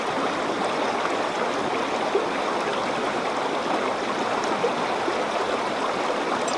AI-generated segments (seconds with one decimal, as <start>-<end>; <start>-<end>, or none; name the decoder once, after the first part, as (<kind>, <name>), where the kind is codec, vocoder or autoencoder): none